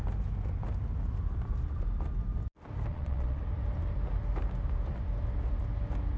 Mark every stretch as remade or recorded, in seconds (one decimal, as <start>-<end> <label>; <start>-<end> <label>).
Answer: 0.0-2.9 recorded; 2.9-3.4 remade; 3.4-6.2 recorded